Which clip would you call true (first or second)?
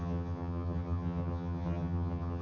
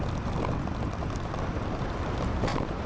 second